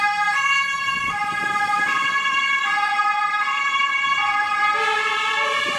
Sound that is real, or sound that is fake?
fake